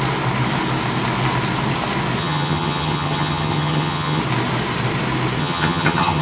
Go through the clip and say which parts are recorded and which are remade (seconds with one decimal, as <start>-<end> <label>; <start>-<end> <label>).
0.0-2.2 recorded; 2.2-4.2 remade; 4.2-5.4 recorded; 5.4-6.2 remade